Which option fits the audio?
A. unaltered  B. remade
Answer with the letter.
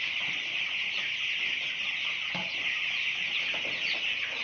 A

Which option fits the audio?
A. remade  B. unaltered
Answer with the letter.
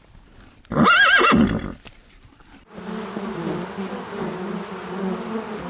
B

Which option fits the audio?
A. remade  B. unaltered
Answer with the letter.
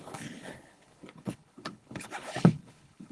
A